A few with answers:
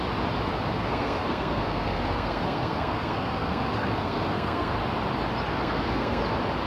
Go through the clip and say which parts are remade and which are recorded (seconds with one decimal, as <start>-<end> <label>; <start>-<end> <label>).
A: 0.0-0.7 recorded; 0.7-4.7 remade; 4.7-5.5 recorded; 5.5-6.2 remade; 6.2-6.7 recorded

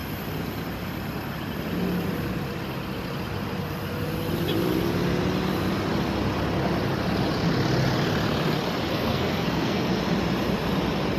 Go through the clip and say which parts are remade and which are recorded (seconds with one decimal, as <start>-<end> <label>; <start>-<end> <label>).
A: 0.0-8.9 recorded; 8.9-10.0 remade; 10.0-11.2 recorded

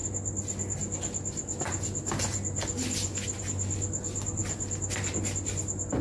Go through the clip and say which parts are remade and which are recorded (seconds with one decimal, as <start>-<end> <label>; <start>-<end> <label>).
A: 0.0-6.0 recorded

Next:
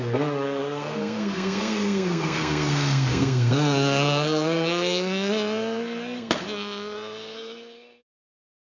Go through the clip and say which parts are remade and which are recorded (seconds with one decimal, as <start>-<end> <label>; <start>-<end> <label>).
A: 0.0-8.6 remade